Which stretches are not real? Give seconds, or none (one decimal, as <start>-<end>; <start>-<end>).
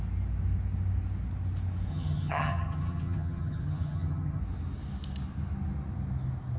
1.9-4.4